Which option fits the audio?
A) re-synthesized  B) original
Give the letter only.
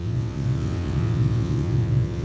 A